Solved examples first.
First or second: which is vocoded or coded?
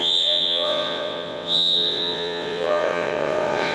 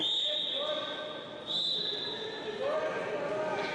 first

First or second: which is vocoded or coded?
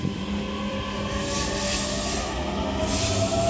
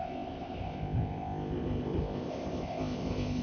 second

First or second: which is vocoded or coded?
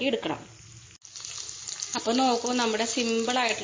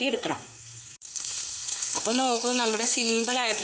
second